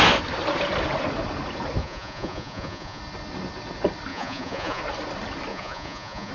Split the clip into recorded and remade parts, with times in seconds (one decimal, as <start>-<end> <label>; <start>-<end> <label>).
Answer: 0.0-1.8 recorded; 1.8-3.0 remade; 3.0-4.1 recorded; 4.1-4.8 remade; 4.8-5.5 recorded; 5.5-6.3 remade